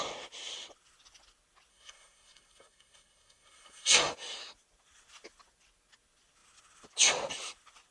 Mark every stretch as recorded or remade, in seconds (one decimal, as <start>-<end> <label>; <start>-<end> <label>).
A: 0.0-1.7 recorded; 1.7-4.1 remade; 4.1-7.9 recorded

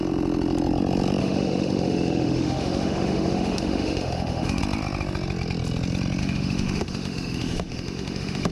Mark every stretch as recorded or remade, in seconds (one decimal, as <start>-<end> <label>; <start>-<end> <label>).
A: 0.0-1.2 recorded; 1.2-4.6 remade; 4.6-6.2 recorded; 6.2-8.5 remade